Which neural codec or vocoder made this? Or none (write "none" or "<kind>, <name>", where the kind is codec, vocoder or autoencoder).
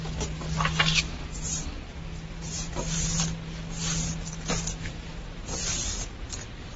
none